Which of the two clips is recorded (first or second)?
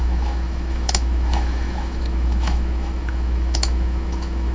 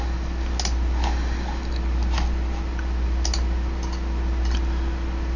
second